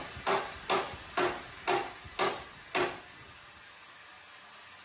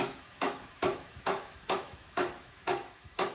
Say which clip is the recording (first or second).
first